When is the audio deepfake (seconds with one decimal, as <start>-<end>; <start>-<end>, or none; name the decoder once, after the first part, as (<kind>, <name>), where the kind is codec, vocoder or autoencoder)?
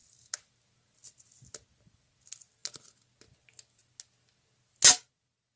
none